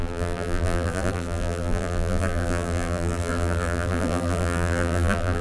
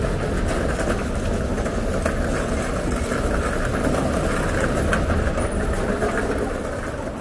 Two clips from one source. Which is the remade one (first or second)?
first